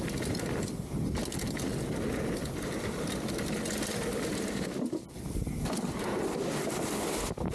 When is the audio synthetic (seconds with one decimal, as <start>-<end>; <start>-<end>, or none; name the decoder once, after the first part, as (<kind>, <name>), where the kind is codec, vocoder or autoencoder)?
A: none